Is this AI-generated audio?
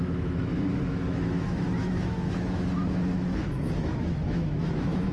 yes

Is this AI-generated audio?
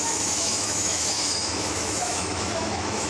yes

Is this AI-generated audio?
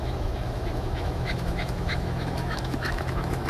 yes